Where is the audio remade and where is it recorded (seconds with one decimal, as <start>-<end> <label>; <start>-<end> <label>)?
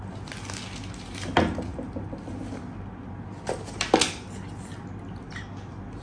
0.0-6.0 recorded